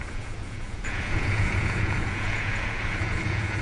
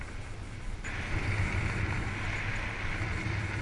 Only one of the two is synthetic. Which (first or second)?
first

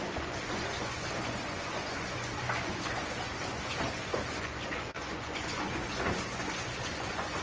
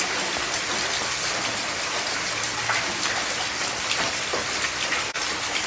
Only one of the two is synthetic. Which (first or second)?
first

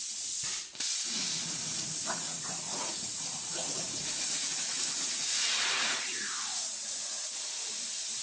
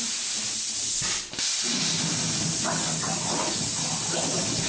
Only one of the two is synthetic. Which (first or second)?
first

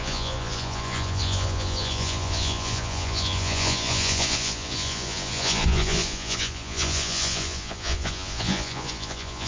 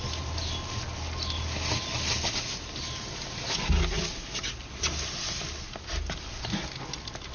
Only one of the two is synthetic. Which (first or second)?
first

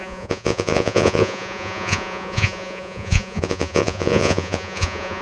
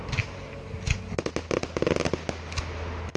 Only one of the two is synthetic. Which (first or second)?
first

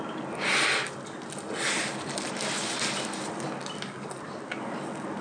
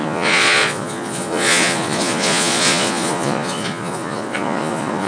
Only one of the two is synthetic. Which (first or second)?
second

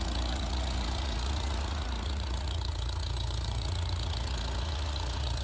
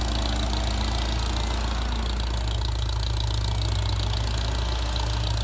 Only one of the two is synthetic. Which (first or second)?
first